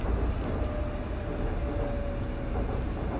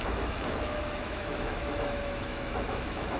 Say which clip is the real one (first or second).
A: first